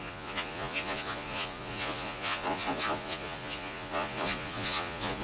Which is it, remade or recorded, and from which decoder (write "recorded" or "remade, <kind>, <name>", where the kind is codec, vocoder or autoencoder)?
remade, vocoder, Vocos